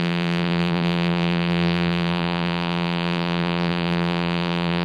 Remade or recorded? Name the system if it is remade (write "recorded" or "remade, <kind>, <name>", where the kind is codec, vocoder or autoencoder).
remade, vocoder, BigVGAN v2